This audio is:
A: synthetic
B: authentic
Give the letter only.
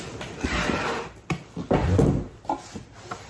B